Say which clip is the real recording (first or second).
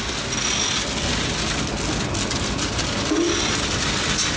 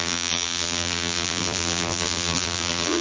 first